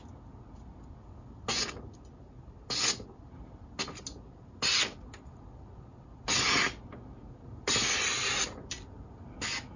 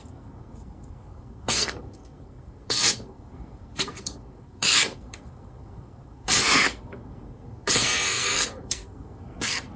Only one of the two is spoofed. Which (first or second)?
second